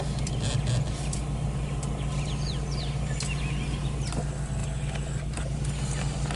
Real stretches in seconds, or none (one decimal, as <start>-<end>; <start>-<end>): 0.0-6.4